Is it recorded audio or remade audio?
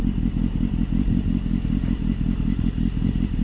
recorded